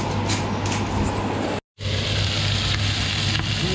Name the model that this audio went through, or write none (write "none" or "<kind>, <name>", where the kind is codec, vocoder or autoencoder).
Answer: none